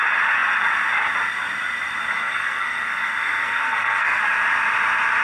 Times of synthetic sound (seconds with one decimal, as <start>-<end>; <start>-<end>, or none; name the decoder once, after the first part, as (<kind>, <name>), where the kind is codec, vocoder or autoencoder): 2.1-4.2 (codec, SNAC)